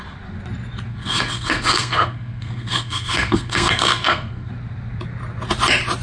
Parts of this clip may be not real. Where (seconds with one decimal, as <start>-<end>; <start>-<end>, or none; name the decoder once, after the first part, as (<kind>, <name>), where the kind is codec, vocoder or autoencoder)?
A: 0.9-4.5 (codec, SNAC)